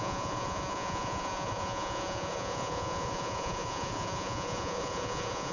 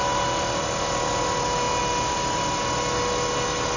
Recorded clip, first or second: second